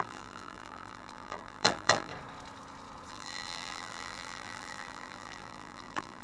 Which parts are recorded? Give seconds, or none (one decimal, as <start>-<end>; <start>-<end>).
2.1-3.1